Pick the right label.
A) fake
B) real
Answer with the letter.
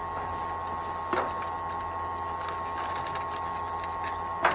B